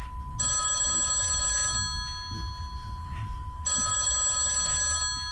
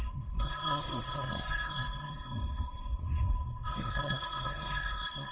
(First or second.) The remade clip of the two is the second